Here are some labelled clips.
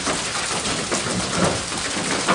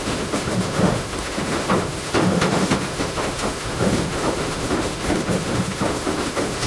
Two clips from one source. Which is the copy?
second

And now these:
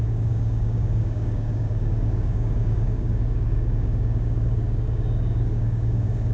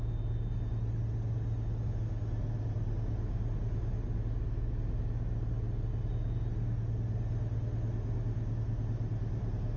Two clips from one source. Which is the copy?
first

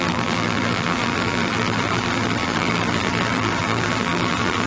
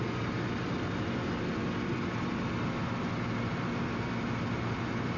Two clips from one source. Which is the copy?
first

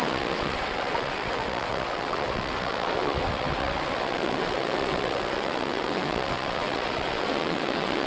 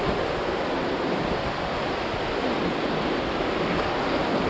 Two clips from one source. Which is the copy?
first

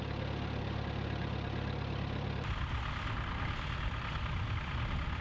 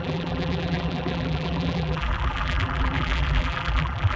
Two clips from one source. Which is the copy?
second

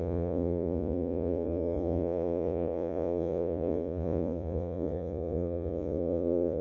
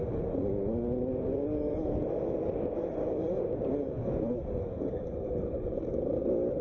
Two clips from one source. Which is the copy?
first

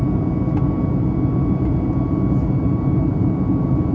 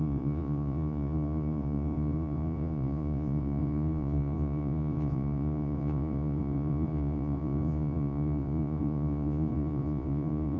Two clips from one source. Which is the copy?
second